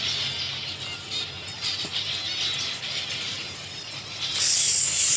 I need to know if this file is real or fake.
real